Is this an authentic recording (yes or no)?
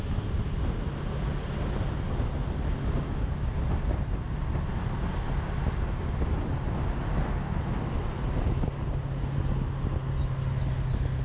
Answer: yes